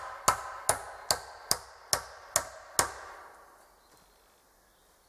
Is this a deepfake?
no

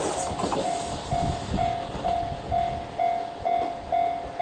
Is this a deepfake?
no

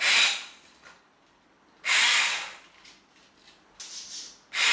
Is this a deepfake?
no